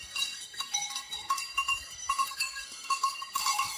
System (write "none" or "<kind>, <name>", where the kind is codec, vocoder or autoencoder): codec, SNAC